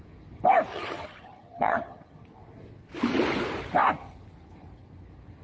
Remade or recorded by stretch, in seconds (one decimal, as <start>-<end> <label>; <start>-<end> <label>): 0.0-0.7 recorded; 0.7-2.2 remade; 2.2-5.4 recorded